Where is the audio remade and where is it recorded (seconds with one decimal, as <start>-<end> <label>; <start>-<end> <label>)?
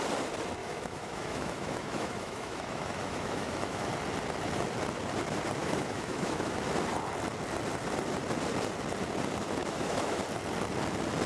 0.0-0.6 recorded; 0.6-3.9 remade; 3.9-5.6 recorded; 5.6-6.6 remade; 6.6-9.6 recorded; 9.6-10.2 remade; 10.2-11.3 recorded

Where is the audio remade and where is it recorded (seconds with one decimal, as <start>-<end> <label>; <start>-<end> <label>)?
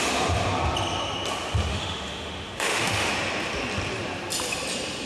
0.0-1.7 recorded; 1.7-3.1 remade; 3.1-5.1 recorded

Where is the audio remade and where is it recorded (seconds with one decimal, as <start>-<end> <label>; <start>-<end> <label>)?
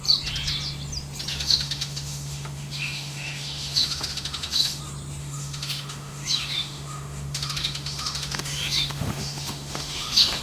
0.0-1.3 recorded; 1.3-4.8 remade; 4.8-5.2 recorded; 5.2-10.4 remade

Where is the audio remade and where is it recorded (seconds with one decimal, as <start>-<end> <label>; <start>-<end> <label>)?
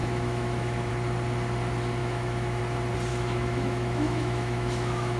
0.0-0.9 remade; 0.9-2.0 recorded; 2.0-2.6 remade; 2.6-3.1 recorded; 3.1-5.2 remade